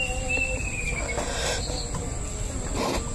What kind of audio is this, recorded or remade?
recorded